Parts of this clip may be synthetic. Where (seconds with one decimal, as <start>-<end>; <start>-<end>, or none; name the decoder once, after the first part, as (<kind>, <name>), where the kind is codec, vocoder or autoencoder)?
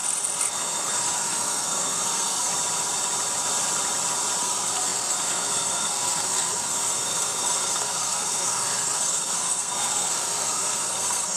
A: 0.5-2.5 (codec, SNAC); 4.4-11.4